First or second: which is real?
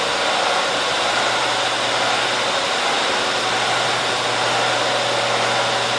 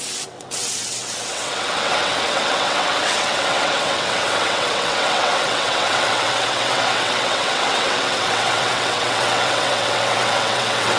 first